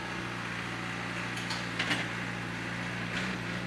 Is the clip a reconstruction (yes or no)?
no